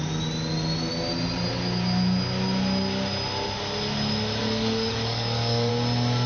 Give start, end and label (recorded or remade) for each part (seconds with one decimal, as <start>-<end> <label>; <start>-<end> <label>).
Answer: 0.0-4.4 recorded; 4.4-5.7 remade; 5.7-6.3 recorded